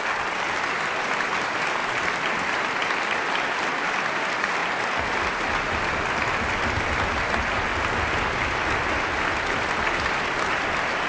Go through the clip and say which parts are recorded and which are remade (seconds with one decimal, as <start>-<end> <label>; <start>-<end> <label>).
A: 0.0-1.8 recorded; 1.8-3.3 remade; 3.3-11.1 recorded